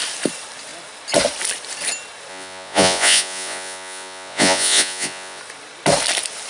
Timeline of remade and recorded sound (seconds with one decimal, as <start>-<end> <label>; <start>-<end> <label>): 0.0-2.3 recorded; 2.3-5.4 remade; 5.4-6.5 recorded